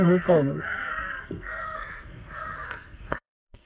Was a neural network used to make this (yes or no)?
yes